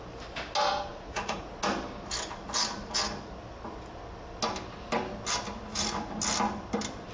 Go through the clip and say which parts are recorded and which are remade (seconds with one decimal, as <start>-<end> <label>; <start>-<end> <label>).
0.0-0.9 recorded; 0.9-1.5 remade; 1.5-5.7 recorded; 5.7-6.2 remade; 6.2-7.1 recorded